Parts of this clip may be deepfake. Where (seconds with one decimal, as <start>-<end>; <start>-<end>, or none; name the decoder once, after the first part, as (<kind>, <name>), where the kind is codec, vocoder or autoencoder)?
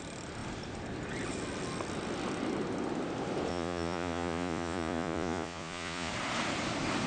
3.5-6.1 (vocoder, Vocos)